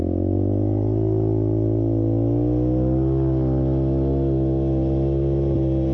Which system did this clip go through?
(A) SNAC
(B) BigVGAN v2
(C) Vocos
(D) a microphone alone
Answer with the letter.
D